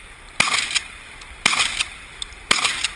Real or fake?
real